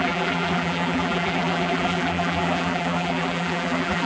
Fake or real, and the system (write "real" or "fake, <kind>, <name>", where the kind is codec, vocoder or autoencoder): fake, vocoder, BigVGAN v2